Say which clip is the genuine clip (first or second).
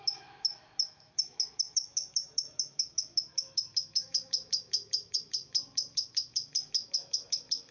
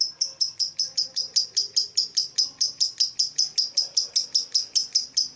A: second